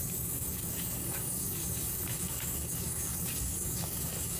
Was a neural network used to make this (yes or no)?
yes